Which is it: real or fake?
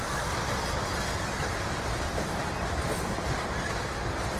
real